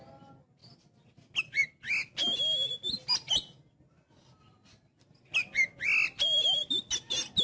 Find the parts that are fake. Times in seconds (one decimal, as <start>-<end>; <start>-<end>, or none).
none